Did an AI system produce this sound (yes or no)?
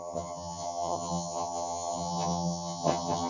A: yes